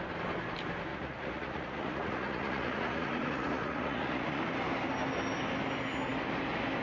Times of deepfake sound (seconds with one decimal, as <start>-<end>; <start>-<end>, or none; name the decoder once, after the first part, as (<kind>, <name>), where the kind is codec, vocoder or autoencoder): 0.9-4.4 (vocoder, Vocos)